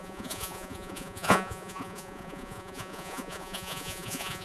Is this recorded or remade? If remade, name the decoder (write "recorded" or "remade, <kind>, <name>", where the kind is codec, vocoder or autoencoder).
remade, vocoder, Vocos